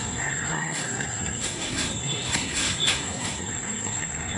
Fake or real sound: fake